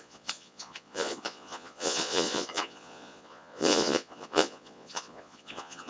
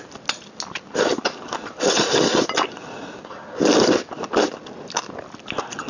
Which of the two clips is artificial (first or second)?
first